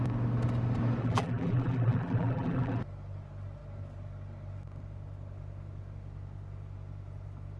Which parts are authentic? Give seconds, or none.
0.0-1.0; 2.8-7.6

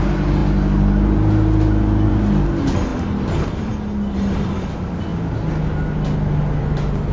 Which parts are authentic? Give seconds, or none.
0.0-7.1

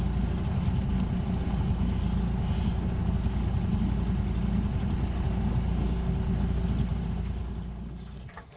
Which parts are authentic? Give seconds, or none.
0.0-6.9

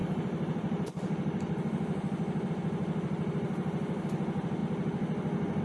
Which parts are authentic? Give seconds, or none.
4.6-5.6

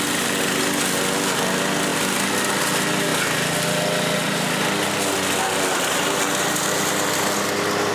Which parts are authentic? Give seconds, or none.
0.0-7.9